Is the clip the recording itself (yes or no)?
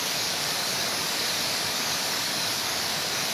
no